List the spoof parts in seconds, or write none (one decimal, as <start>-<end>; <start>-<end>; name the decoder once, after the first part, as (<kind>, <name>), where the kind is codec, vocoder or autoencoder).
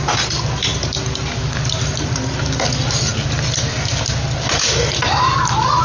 none